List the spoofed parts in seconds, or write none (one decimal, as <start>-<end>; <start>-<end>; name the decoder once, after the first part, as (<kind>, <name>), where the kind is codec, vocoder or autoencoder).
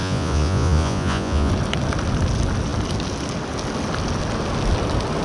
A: 0.0-1.5 (vocoder, Vocos)